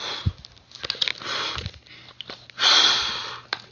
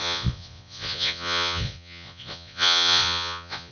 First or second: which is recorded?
first